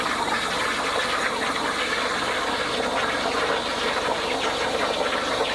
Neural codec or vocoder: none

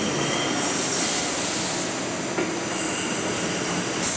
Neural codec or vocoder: none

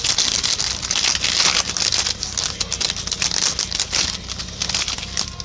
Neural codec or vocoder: none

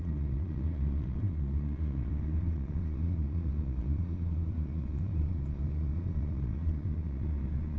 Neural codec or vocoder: vocoder, Vocos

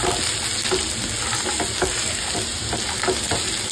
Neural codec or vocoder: none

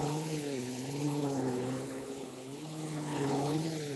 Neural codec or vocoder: codec, HILCodec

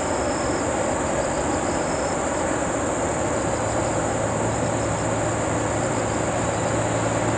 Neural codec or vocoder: none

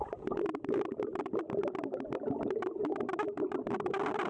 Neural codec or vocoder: vocoder, BigVGAN v2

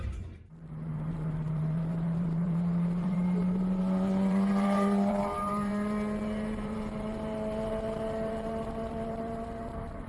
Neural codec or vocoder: vocoder, BigVGAN v2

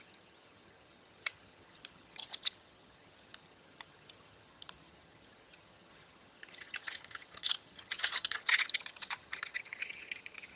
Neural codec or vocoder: vocoder, HiFi-GAN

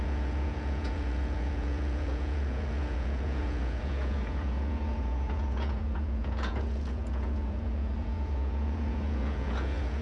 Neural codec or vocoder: vocoder, Vocos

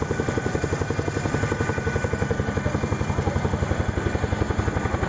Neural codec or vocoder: none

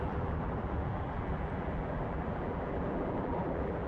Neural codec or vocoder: vocoder, BigVGAN v2